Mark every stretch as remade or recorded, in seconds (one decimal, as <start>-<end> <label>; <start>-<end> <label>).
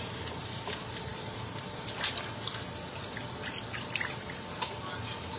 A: 0.0-5.4 recorded